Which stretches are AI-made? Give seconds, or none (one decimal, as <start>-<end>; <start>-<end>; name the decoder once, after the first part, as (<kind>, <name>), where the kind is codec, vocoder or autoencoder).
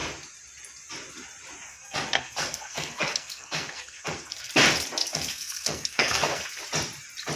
1.7-4.5 (codec, SNAC); 5.1-6.6